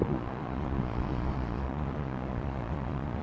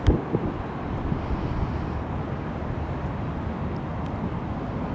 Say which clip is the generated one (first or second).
first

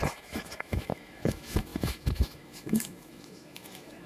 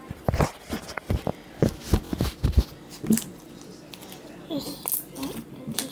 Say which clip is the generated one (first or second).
first